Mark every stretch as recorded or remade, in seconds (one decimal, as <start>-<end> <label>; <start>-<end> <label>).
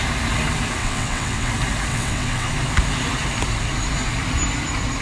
0.0-0.8 recorded; 0.8-1.5 remade; 1.5-1.9 recorded; 1.9-2.5 remade; 2.5-5.0 recorded